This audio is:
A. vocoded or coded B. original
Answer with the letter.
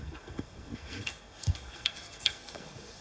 A